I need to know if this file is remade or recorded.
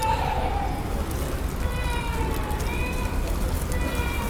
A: recorded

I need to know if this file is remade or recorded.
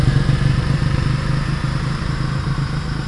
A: remade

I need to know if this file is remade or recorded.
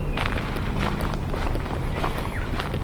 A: remade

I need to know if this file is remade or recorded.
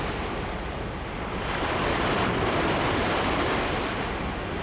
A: recorded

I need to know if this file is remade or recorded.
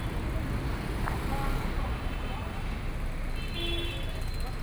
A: recorded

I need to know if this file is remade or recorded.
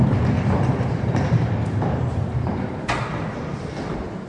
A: remade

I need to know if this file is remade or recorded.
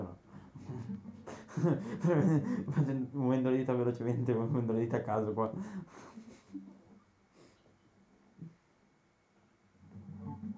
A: recorded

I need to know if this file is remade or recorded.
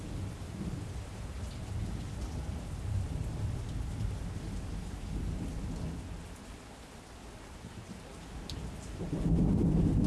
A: recorded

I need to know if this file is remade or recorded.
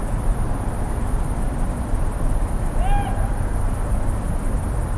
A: remade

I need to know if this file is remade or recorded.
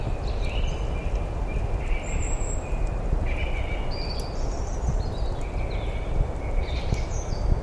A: recorded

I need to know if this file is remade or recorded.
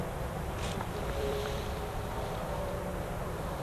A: remade